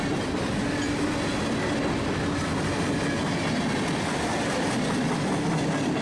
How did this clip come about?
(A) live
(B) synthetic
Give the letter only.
A